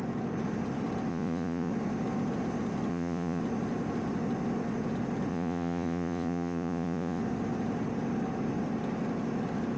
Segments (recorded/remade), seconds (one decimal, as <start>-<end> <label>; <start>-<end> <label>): 0.0-1.1 recorded; 1.1-1.7 remade; 1.7-2.9 recorded; 2.9-3.4 remade; 3.4-5.3 recorded; 5.3-7.2 remade; 7.2-9.8 recorded